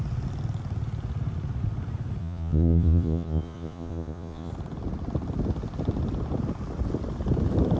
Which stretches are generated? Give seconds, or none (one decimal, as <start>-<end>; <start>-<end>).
2.2-4.5

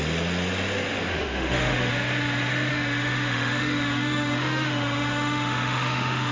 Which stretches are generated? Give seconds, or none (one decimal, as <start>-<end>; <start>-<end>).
1.1-1.9; 2.7-6.3

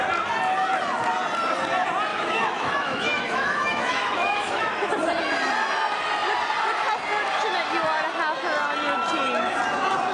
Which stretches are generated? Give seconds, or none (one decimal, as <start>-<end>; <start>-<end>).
2.1-4.9

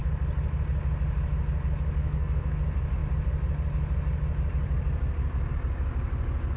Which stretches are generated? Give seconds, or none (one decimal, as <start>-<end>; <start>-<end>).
2.0-2.6

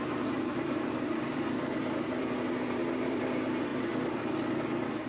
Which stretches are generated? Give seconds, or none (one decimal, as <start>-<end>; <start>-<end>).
0.0-3.7